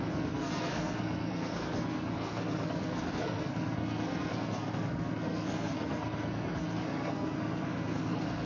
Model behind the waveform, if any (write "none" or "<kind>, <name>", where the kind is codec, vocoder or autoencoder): codec, SNAC